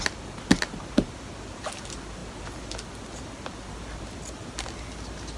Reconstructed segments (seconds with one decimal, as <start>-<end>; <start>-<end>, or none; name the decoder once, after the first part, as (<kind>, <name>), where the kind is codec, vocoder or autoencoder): none